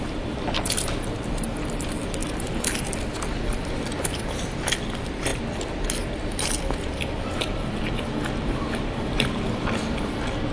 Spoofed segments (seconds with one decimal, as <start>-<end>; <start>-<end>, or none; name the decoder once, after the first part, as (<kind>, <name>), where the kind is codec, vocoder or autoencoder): 0.0-2.2 (vocoder, BigVGAN v2); 3.7-5.3; 8.4-10.5